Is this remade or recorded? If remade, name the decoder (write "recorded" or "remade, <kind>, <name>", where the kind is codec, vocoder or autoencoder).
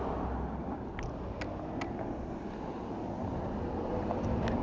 recorded